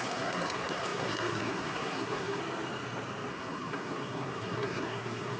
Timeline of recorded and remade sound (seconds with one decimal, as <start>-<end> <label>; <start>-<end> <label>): 0.0-2.4 remade; 2.4-3.3 recorded; 3.3-5.4 remade